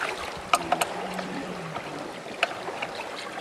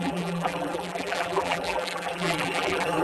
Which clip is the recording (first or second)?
first